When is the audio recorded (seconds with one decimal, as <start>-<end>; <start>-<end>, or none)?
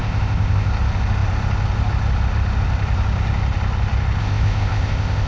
0.7-4.2